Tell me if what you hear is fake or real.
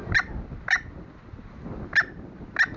real